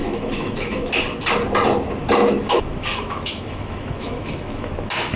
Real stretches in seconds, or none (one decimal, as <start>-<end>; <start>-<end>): 0.9-2.4; 4.7-5.2